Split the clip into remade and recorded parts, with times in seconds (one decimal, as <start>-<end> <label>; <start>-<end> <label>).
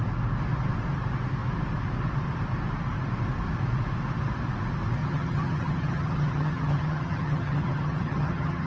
0.0-5.0 recorded; 5.0-8.7 remade